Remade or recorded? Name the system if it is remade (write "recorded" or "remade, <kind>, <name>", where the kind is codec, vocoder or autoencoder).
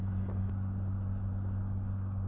recorded